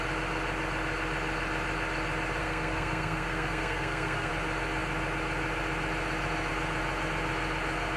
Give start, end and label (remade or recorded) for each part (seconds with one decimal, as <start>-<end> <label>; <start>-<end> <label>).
0.0-2.4 recorded; 2.4-4.3 remade; 4.3-8.0 recorded

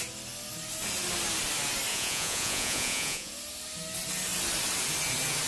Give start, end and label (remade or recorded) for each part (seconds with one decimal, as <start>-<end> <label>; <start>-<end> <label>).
0.0-1.9 recorded; 1.9-3.3 remade; 3.3-5.5 recorded

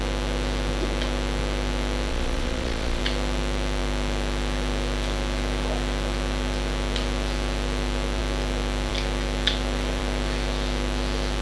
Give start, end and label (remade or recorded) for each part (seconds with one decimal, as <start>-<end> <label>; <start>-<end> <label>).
0.0-2.1 recorded; 2.1-3.0 remade; 3.0-11.4 recorded

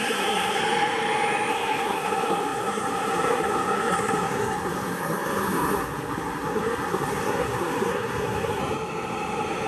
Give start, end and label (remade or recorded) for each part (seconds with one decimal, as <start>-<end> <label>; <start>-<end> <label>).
0.0-0.6 remade; 0.6-1.5 recorded; 1.5-8.6 remade; 8.6-9.7 recorded

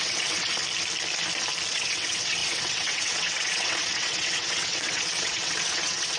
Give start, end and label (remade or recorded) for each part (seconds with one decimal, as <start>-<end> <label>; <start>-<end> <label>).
0.0-0.6 remade; 0.6-1.7 recorded; 1.7-6.2 remade

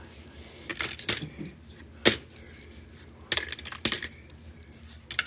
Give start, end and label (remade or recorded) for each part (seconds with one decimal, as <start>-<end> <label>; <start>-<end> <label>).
0.0-0.7 recorded; 0.7-1.5 remade; 1.5-5.3 recorded

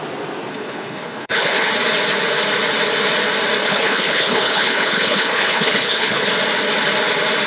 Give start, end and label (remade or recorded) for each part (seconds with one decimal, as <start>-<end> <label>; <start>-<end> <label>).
0.0-0.5 recorded; 0.5-1.7 remade; 1.7-3.6 recorded; 3.6-6.3 remade; 6.3-7.5 recorded